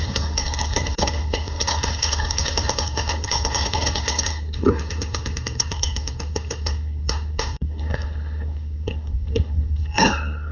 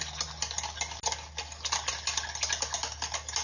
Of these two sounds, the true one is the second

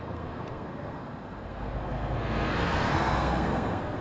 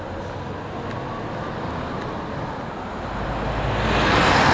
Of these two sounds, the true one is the second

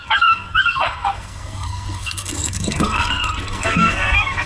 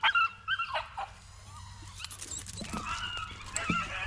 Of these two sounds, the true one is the second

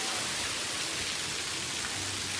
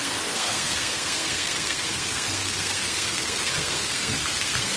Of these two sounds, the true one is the first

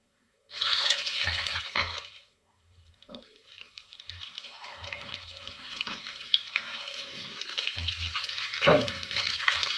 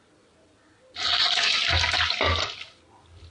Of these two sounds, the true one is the second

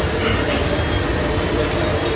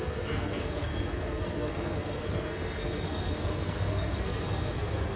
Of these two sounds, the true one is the first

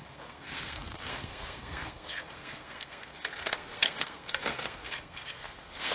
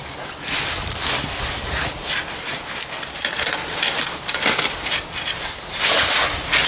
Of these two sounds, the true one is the second